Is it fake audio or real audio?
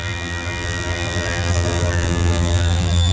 fake